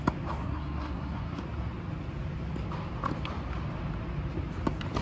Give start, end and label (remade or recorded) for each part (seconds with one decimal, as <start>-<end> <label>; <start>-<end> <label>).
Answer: 0.0-0.4 recorded; 0.4-1.4 remade; 1.4-5.0 recorded